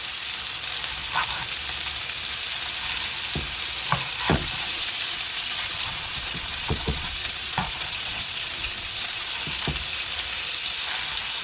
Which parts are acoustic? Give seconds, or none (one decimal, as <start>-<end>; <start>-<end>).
0.0-4.3; 9.3-11.4